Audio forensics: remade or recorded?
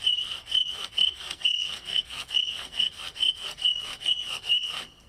remade